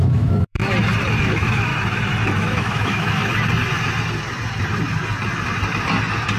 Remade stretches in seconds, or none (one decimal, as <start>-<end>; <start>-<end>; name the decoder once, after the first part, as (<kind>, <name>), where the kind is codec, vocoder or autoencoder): 0.0-0.6 (autoencoder, DAC-VAE); 1.2-1.7; 2.4-3.3